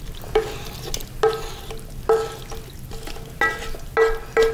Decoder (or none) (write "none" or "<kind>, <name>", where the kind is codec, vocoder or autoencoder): none